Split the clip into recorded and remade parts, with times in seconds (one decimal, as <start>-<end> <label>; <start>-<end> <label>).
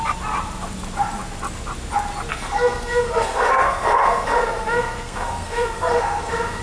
0.0-2.3 recorded; 2.3-6.6 remade